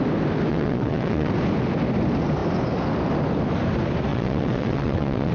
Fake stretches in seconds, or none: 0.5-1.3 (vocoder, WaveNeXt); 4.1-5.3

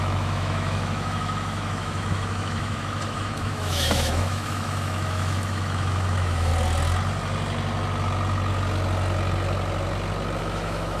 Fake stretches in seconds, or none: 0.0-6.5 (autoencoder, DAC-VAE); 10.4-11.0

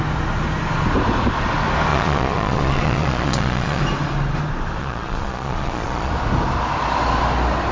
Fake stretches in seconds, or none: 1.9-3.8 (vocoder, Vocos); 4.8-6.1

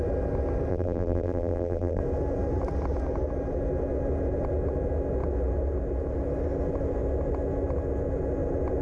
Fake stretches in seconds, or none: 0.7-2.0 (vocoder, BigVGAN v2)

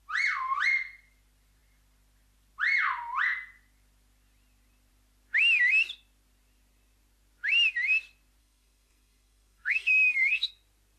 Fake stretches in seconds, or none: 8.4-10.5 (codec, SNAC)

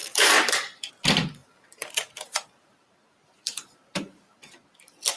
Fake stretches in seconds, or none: 0.0-0.9 (vocoder, BigVGAN v2); 1.4-4.5

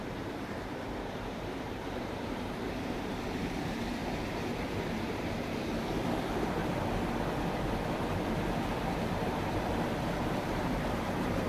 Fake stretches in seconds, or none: 0.0-6.6 (vocoder, BigVGAN v2); 7.5-11.5